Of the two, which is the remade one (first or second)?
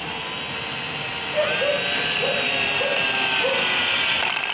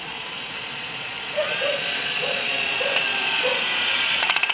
second